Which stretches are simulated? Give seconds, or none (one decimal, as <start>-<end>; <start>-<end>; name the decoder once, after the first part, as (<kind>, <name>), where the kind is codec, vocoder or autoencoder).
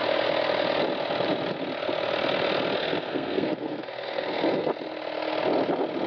2.8-4.7 (codec, SNAC)